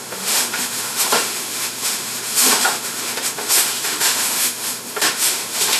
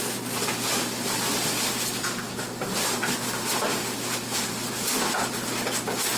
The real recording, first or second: second